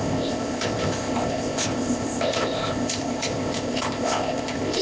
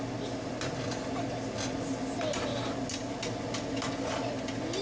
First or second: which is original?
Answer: second